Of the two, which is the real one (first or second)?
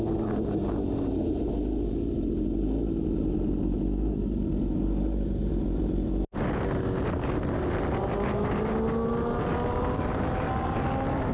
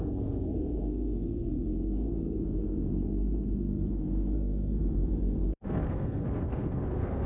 first